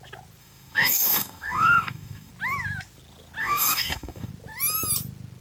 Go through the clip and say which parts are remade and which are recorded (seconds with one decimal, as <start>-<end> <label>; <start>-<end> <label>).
0.0-0.4 recorded; 0.4-2.3 remade; 2.3-3.4 recorded; 3.4-4.3 remade; 4.3-5.4 recorded